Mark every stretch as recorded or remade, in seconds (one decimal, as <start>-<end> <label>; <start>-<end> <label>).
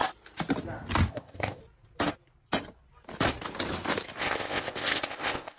0.0-1.1 recorded; 1.1-1.6 remade; 1.6-4.2 recorded; 4.2-5.6 remade